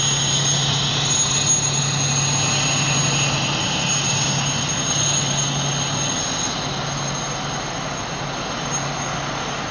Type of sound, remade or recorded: recorded